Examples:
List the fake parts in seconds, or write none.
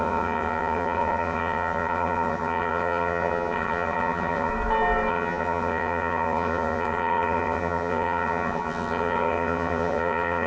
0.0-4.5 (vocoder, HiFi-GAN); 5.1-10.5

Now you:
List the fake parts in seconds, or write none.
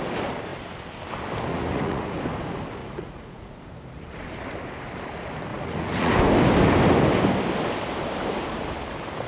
1.5-2.2 (vocoder, Vocos); 2.8-3.6; 5.5-6.1